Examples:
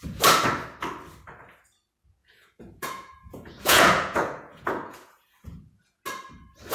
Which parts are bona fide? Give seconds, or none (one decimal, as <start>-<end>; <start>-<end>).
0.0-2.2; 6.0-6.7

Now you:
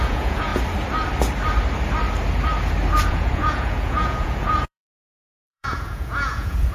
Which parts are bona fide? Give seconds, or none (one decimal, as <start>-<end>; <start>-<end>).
0.5-3.1

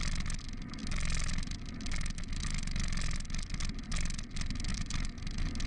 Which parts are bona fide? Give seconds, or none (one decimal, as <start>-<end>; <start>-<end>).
0.0-4.7; 5.2-5.7

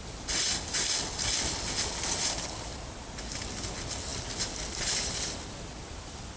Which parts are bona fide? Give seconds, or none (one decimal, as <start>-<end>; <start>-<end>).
0.0-6.4

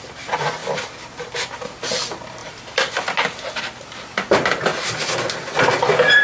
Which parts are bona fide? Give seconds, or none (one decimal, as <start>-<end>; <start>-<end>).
0.0-2.4; 3.1-6.2